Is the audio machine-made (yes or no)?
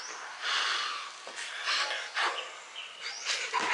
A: no